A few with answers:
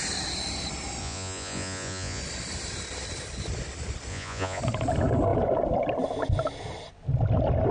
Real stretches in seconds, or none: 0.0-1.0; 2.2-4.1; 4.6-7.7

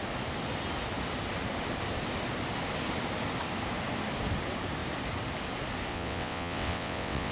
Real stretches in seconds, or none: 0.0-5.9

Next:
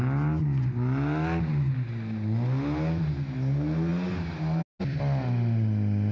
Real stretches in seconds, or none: 0.0-6.1

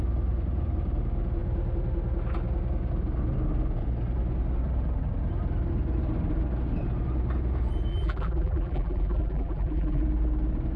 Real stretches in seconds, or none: 0.0-7.9; 10.0-10.8

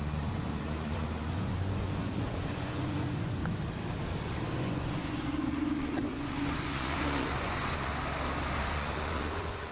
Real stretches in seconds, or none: 3.4-4.6; 7.9-8.6

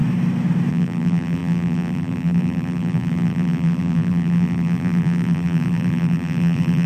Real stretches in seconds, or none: 0.0-0.7

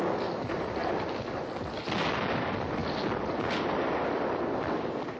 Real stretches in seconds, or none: 0.0-5.2

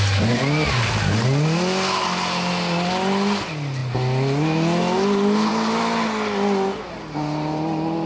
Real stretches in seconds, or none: 0.0-8.1